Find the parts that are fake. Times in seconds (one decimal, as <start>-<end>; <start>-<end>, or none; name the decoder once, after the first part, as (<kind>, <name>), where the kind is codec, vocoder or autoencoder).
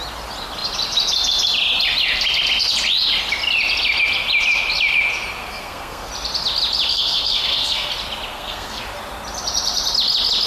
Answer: 5.4-6.1 (codec, SNAC); 6.9-7.9; 8.3-8.8